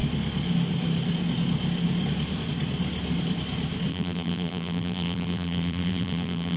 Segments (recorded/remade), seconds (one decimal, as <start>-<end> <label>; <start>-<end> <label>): 0.0-3.9 recorded; 3.9-6.6 remade